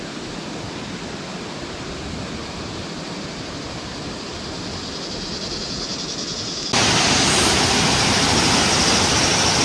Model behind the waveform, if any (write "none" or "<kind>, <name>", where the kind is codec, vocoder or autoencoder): none